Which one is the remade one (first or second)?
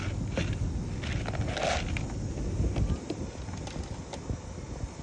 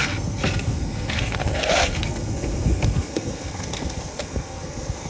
second